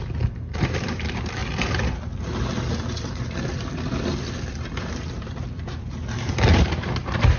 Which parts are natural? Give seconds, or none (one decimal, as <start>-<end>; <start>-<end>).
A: none